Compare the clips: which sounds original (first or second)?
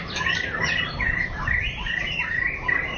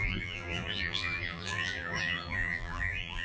first